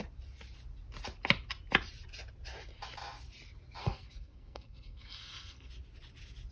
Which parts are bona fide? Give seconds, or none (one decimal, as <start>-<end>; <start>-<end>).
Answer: 0.0-3.8; 5.7-6.5